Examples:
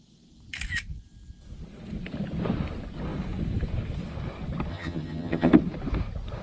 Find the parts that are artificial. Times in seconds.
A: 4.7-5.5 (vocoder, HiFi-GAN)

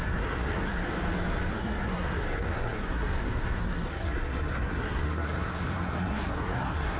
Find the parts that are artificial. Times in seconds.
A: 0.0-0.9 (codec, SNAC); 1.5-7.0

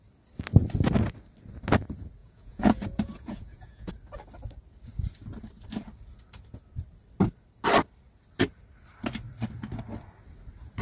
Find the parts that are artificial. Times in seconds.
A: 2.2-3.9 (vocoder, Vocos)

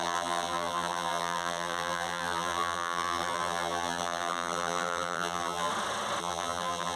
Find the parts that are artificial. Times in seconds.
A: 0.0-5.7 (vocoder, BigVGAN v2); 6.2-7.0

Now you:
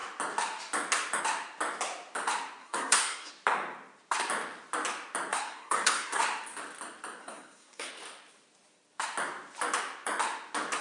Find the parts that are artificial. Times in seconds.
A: 2.6-3.3 (codec, SNAC); 5.3-6.2; 7.2-7.9

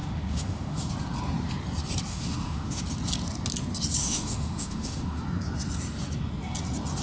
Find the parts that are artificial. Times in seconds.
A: 0.0-0.9 (autoencoder, DAC-VAE); 2.1-2.8; 4.0-5.2

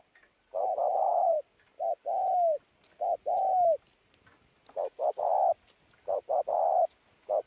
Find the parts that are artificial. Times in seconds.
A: none